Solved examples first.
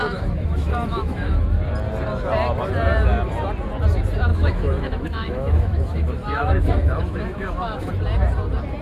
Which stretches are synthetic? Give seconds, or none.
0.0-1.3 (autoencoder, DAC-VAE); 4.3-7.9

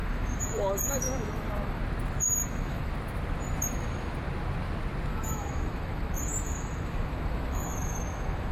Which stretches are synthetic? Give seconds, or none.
0.0-1.8 (autoencoder, DAC-VAE); 2.4-2.9; 5.1-8.5

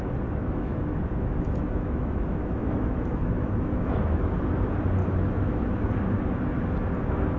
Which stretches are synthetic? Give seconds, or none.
0.4-4.4 (autoencoder, DAC-VAE); 5.0-5.9

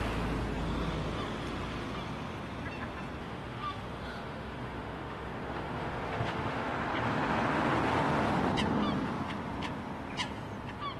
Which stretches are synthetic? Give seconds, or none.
3.2-6.7 (autoencoder, DAC-VAE)

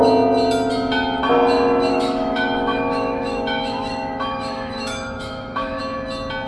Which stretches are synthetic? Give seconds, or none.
1.9-5.8 (autoencoder, DAC-VAE)

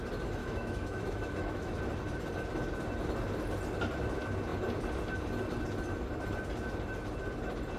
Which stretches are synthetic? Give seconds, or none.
0.4-1.8 (autoencoder, DAC-VAE)